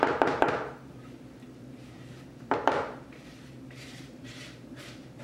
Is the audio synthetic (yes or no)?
yes